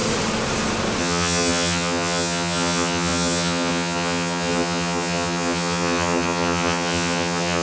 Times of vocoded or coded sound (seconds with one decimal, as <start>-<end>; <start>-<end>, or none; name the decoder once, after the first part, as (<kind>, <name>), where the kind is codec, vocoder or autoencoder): 1.0-7.6 (vocoder, HiFi-GAN)